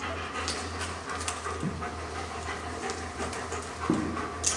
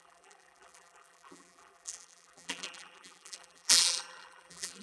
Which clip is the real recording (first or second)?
first